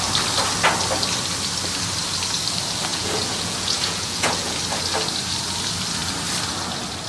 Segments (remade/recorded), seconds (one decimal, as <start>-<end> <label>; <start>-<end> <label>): 0.0-2.9 recorded; 2.9-4.6 remade; 4.6-7.1 recorded